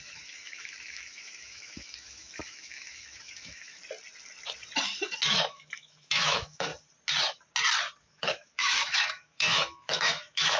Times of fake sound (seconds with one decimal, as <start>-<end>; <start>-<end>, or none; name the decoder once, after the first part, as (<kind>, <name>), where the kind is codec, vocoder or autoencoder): 0.0-3.8 (autoencoder, DAC-VAE); 5.3-6.7; 8.0-10.6

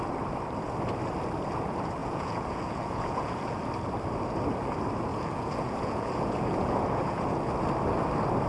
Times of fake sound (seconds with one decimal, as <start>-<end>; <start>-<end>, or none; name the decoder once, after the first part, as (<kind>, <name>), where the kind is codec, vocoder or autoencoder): 2.0-3.6 (vocoder, Vocos); 5.1-7.4